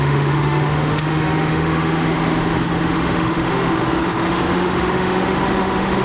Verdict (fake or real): fake